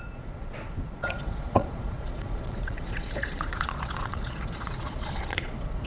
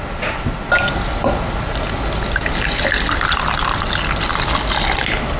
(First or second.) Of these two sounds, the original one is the second